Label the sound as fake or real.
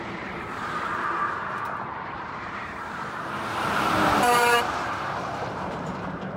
fake